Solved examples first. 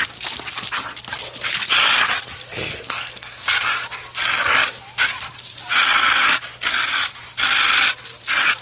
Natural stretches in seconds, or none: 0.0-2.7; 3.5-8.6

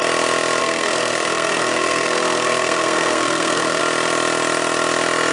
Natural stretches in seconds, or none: 0.0-0.6; 3.8-5.3

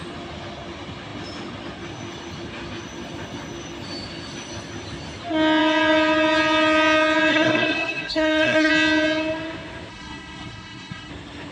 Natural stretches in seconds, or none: 0.0-7.3; 8.7-9.9; 11.1-11.5

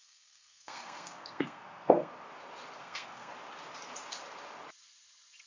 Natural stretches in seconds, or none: 2.1-2.8; 3.3-5.5

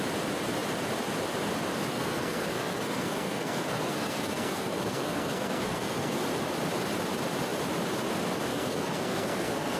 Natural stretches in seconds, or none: 0.0-1.9; 6.2-8.5

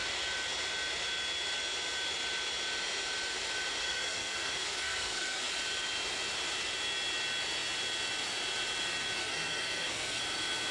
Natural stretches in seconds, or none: 0.0-3.8; 5.5-9.2; 10.2-10.7

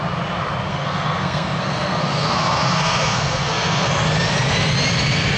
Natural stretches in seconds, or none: 0.0-0.7; 3.9-5.4

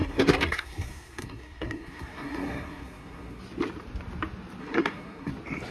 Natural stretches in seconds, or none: 3.4-4.6; 5.3-5.7